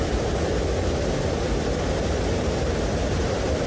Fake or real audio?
real